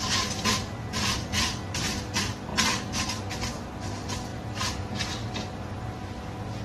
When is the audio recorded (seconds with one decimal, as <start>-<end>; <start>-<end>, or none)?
0.0-6.6